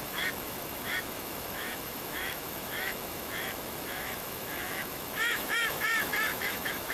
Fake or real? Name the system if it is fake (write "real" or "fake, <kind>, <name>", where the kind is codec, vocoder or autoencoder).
fake, autoencoder, DAC-VAE